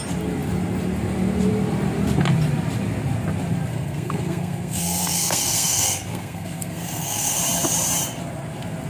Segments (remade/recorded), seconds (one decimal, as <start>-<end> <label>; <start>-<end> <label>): 0.0-3.7 recorded; 3.7-7.4 remade; 7.4-8.9 recorded

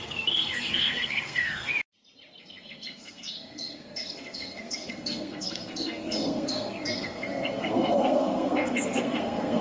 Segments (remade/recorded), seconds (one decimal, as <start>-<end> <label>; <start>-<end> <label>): 0.0-1.7 remade; 1.7-2.4 recorded; 2.4-9.6 remade